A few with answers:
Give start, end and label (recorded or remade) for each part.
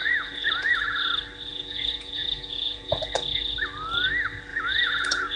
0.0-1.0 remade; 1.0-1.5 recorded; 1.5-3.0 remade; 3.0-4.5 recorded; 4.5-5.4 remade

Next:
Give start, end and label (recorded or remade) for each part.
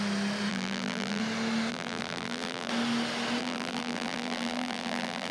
0.0-0.5 recorded; 0.5-1.2 remade; 1.2-1.7 recorded; 1.7-2.7 remade; 2.7-3.4 recorded; 3.4-5.3 remade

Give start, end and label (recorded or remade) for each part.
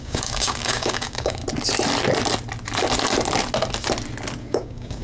0.0-1.4 remade; 1.4-4.4 recorded; 4.4-5.0 remade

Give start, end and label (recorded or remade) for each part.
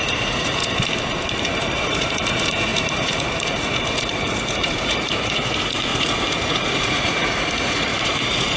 0.0-0.6 remade; 0.6-1.6 recorded; 1.6-8.6 remade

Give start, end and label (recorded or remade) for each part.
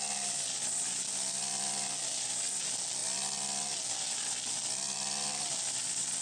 0.0-6.2 recorded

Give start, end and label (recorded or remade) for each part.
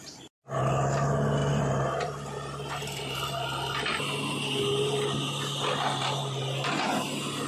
0.0-1.4 recorded; 1.4-3.8 remade; 3.8-7.5 recorded